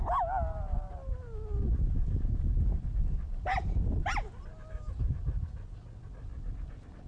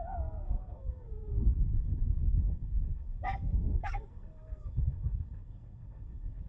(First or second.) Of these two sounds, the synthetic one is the second